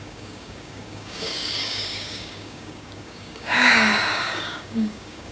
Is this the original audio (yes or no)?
no